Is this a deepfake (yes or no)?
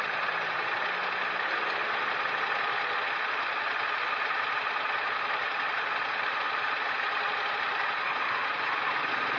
no